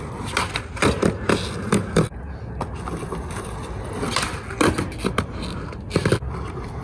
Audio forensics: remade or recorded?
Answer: recorded